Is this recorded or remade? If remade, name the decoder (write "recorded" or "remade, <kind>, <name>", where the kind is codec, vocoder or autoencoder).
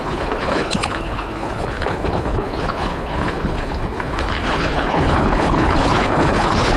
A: remade, codec, HILCodec